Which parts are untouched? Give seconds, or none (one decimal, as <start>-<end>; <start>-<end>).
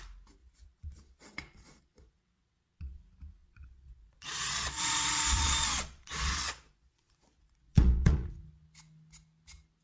0.0-0.4; 3.0-3.4; 8.3-9.8